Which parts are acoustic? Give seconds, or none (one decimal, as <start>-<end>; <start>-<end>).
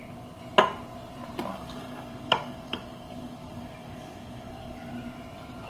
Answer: 0.0-1.5; 4.9-5.7